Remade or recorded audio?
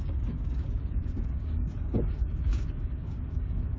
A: remade